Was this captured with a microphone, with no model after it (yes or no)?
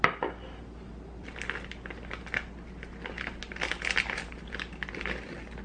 yes